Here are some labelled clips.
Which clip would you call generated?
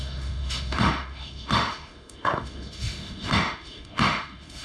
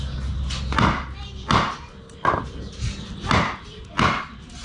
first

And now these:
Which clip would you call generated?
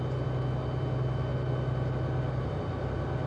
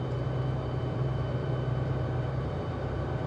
second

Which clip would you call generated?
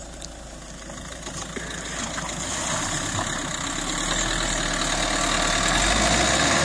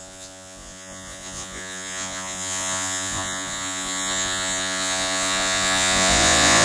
second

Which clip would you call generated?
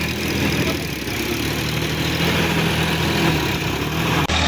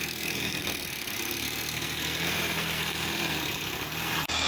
second